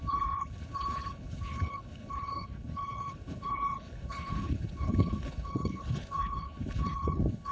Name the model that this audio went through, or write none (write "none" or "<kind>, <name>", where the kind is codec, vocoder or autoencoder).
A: codec, HILCodec